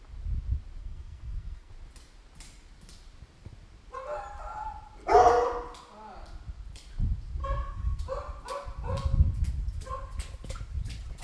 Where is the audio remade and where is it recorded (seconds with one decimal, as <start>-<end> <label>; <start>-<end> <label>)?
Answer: 0.0-0.8 recorded; 0.8-1.7 remade; 1.7-7.4 recorded; 7.4-8.0 remade; 8.0-11.2 recorded